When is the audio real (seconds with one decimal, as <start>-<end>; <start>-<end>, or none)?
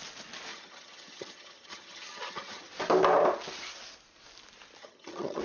0.0-0.5; 2.7-4.8